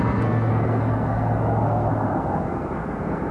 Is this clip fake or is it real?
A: fake